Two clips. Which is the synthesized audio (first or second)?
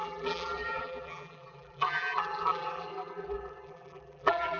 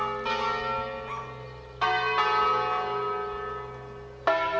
first